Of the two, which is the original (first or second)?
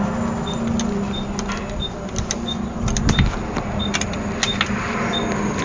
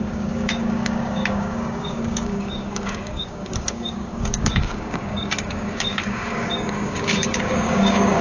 first